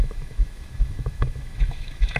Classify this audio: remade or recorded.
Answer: remade